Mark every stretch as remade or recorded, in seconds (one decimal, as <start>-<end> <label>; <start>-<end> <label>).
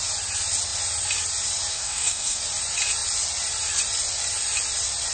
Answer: 0.0-1.7 recorded; 1.7-2.4 remade; 2.4-5.1 recorded